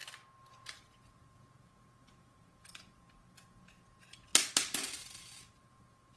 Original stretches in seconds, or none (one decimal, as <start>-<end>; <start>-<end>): 0.0-0.5; 4.3-5.0